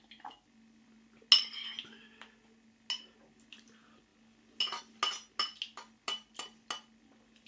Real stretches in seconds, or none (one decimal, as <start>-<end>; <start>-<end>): 0.0-7.5